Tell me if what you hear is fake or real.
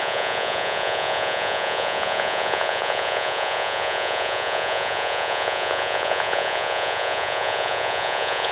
fake